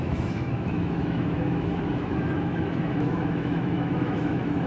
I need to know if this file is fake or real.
fake